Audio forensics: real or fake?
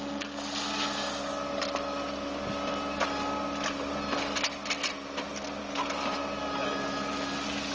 real